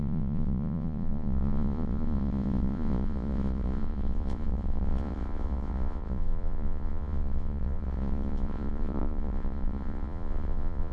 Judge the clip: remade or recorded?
remade